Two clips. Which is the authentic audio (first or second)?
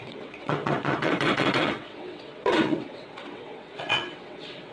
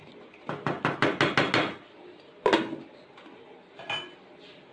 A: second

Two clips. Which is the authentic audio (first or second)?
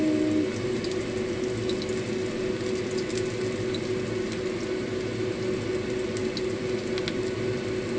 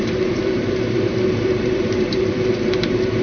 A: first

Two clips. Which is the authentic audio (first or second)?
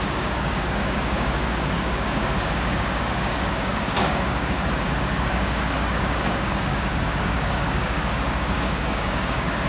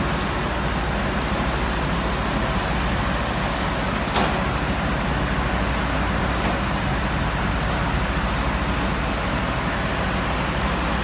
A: second